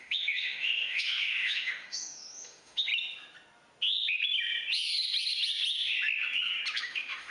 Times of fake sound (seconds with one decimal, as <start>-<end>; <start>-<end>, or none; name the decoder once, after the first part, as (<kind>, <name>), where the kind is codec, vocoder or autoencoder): 0.0-2.9 (autoencoder, DAC-VAE); 6.8-7.3